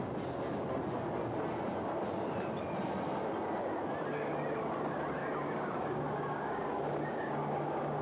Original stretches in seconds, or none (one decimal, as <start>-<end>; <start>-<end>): 0.0-5.2